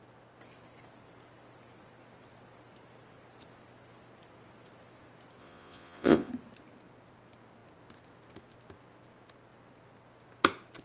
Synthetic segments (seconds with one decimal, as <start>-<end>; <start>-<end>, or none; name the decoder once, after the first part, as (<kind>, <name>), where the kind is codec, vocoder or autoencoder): 5.4-6.3 (vocoder, Vocos)